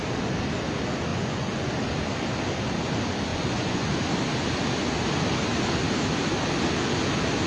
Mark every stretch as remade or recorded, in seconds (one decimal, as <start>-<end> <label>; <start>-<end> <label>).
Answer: 0.0-1.1 recorded; 1.1-1.7 remade; 1.7-3.3 recorded; 3.3-3.9 remade; 3.9-7.5 recorded